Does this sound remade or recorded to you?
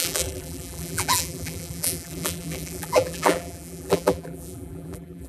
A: remade